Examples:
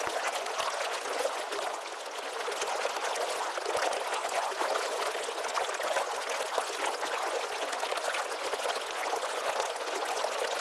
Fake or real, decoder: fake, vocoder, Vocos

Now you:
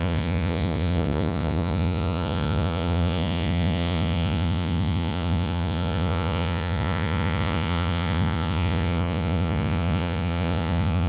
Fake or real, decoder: fake, vocoder, Vocos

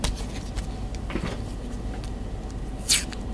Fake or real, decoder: real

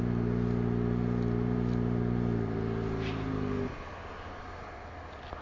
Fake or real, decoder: real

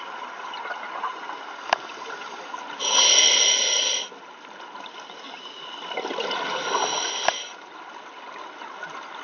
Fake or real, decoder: real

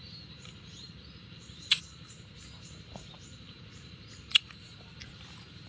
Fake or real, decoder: fake, vocoder, BigVGAN v2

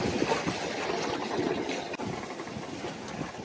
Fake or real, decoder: real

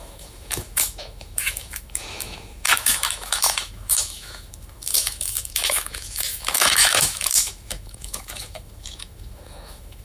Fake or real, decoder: fake, autoencoder, DAC-VAE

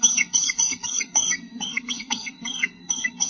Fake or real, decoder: fake, codec, SNAC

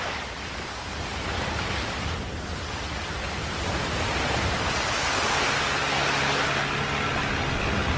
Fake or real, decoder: real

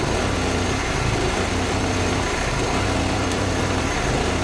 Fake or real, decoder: real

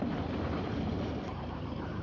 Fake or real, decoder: real